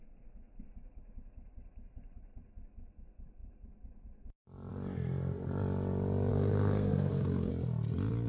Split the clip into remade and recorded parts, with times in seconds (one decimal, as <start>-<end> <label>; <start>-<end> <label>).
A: 0.0-6.3 recorded; 6.3-7.5 remade; 7.5-8.3 recorded